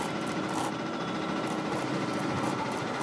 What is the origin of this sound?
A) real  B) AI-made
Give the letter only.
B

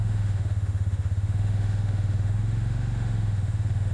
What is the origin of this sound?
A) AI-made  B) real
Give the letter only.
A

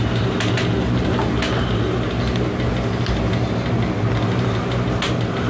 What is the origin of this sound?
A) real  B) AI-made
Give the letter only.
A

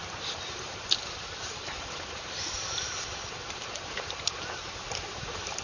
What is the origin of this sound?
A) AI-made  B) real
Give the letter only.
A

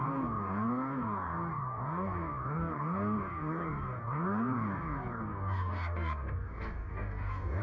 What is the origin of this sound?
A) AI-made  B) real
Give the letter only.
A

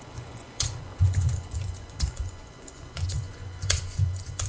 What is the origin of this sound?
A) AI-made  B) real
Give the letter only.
A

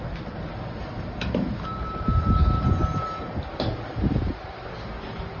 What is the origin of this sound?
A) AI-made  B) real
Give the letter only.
B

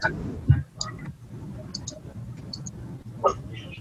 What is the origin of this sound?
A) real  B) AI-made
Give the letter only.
A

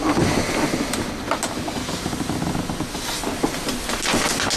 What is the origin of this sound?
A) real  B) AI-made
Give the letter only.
A